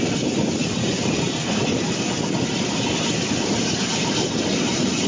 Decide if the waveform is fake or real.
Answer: real